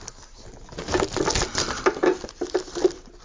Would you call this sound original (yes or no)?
yes